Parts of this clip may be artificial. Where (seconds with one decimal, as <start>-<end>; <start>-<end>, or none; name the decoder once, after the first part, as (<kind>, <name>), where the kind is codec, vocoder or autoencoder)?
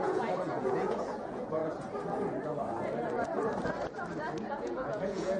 0.0-1.6 (vocoder, Vocos); 4.4-5.4